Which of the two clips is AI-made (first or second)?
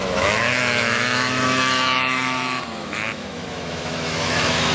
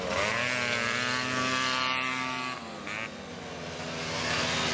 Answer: first